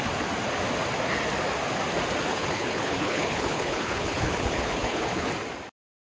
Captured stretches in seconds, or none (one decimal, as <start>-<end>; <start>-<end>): 0.0-2.3; 5.3-6.1